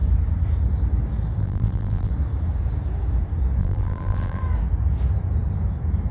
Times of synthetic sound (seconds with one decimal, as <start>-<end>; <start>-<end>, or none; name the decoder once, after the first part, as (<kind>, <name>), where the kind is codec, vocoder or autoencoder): 1.4-2.1 (vocoder, BigVGAN v2); 3.6-4.4